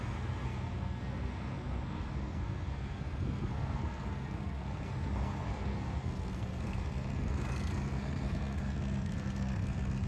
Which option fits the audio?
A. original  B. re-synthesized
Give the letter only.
B